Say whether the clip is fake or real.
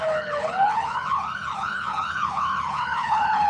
fake